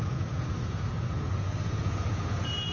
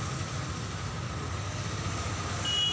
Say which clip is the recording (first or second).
second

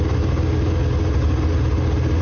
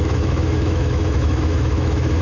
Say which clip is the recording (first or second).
first